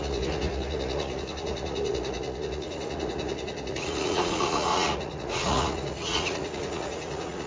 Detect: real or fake fake